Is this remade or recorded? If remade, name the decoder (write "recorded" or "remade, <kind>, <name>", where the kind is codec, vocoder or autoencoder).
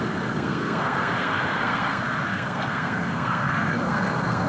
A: remade, codec, SNAC